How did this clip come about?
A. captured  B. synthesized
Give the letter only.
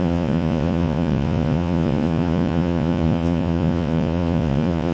B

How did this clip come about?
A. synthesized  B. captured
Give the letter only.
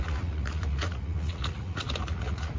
A